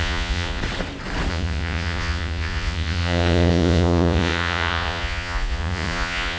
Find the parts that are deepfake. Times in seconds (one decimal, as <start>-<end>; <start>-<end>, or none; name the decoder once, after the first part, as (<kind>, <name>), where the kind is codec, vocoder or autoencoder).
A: 0.0-0.6 (vocoder, Vocos); 1.3-6.4